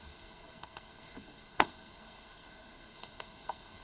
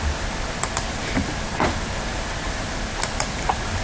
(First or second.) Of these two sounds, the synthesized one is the first